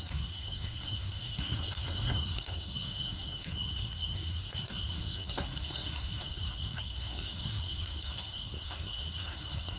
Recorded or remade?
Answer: remade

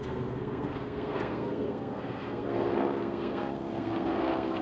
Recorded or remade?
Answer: remade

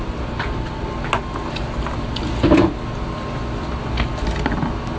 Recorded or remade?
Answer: recorded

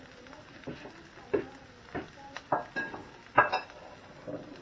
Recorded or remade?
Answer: recorded